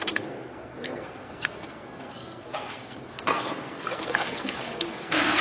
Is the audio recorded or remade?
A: remade